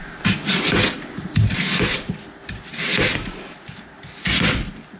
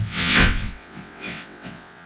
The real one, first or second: first